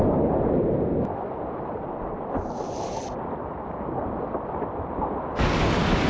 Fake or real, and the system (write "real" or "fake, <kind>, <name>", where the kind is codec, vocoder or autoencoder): real